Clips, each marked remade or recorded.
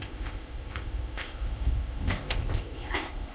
remade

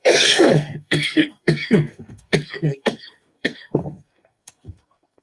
remade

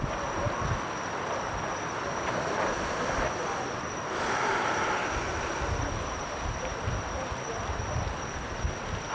recorded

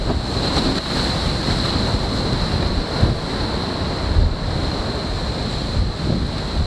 recorded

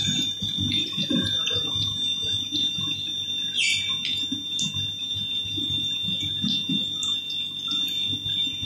recorded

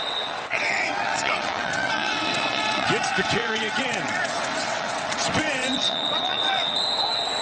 remade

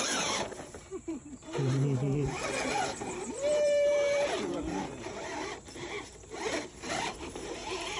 remade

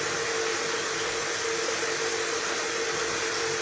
recorded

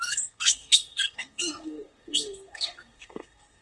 remade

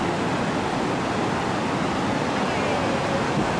recorded